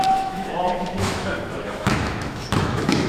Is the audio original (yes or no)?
no